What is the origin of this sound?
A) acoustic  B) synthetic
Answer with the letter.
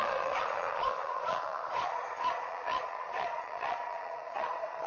B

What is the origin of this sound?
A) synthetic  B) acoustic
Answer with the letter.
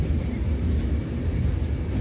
B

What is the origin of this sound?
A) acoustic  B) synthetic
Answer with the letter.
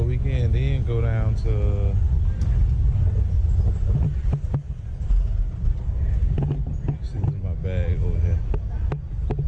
A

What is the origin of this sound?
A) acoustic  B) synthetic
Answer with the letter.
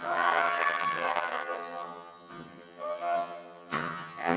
B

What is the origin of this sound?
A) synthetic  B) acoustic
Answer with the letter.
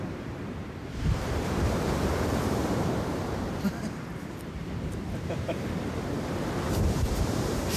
A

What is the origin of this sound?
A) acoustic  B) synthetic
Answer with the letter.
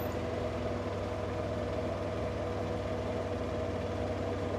A